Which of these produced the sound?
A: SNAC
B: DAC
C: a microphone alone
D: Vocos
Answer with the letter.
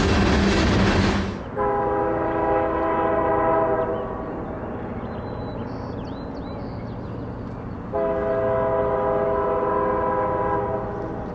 C